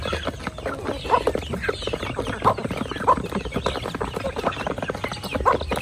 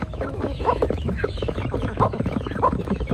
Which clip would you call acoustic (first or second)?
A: first